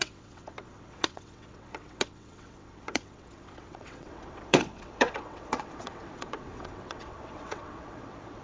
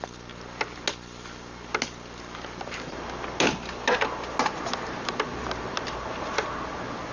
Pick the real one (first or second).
second